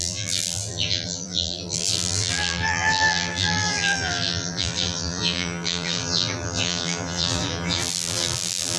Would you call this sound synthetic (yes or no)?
yes